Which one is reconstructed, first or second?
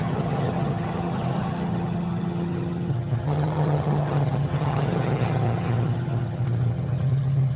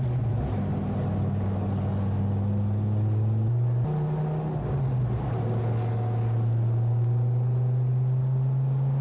first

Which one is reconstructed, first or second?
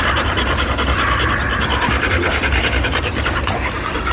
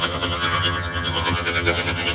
second